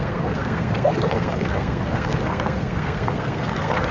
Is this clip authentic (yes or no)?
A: no